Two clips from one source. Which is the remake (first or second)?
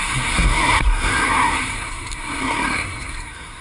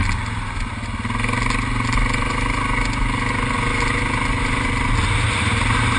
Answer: first